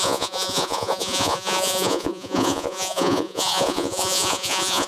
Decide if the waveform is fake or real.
fake